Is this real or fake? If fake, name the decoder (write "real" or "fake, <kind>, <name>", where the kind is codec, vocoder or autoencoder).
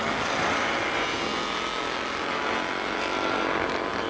real